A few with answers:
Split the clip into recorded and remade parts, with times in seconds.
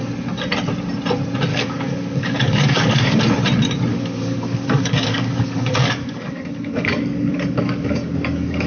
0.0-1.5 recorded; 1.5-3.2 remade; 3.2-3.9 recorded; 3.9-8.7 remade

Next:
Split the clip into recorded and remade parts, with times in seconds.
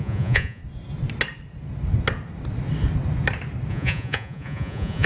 0.0-0.6 remade; 0.6-3.7 recorded; 3.7-5.1 remade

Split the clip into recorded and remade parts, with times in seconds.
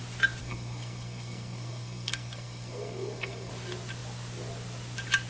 0.0-0.4 recorded; 0.4-3.5 remade; 3.5-5.3 recorded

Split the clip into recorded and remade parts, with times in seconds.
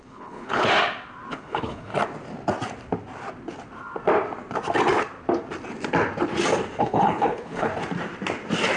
0.0-0.7 remade; 0.7-1.3 recorded; 1.3-1.9 remade; 1.9-6.8 recorded; 6.8-7.7 remade; 7.7-8.8 recorded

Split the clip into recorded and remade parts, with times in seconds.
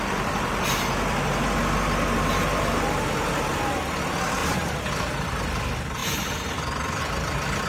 0.0-4.4 recorded; 4.4-5.3 remade; 5.3-6.0 recorded; 6.0-7.0 remade; 7.0-7.7 recorded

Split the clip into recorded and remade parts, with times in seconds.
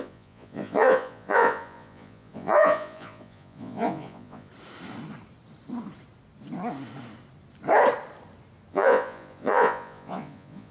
0.0-4.5 remade; 4.5-8.7 recorded; 8.7-10.7 remade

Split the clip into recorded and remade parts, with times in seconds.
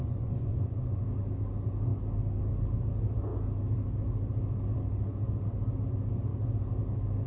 0.0-1.0 remade; 1.0-7.3 recorded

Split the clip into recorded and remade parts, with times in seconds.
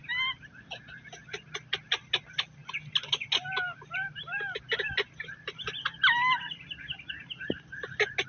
0.0-8.3 recorded